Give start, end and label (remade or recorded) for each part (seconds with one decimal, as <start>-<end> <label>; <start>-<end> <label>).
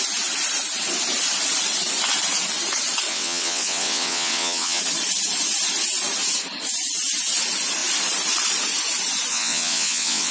0.0-3.1 recorded; 3.1-4.8 remade; 4.8-9.3 recorded; 9.3-10.3 remade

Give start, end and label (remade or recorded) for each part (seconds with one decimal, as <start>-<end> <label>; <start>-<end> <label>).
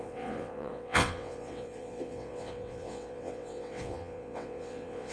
0.0-5.1 remade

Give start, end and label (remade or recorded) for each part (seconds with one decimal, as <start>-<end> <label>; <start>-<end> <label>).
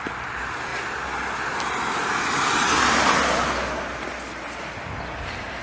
0.0-5.6 recorded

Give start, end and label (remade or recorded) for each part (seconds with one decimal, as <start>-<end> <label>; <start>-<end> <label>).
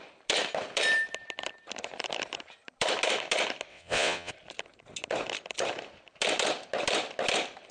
0.0-3.7 recorded; 3.7-4.3 remade; 4.3-7.7 recorded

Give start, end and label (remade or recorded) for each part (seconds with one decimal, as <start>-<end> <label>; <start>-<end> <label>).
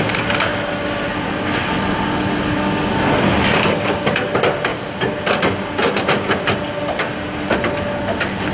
0.0-8.5 recorded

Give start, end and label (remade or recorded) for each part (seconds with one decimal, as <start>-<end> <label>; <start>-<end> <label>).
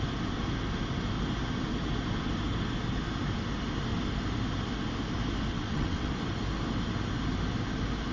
0.0-5.5 recorded; 5.5-6.1 remade; 6.1-8.1 recorded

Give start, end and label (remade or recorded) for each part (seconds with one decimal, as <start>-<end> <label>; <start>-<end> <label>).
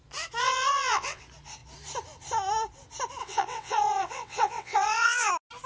0.0-0.4 recorded; 0.4-1.2 remade; 1.2-3.2 recorded; 3.2-5.3 remade; 5.3-5.7 recorded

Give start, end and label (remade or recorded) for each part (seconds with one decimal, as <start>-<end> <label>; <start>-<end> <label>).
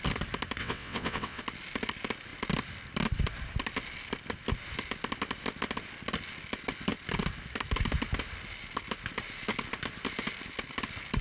0.0-0.6 recorded; 0.6-1.4 remade; 1.4-11.2 recorded